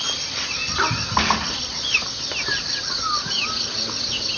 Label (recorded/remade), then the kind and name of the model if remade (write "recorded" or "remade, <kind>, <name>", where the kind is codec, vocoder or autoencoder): recorded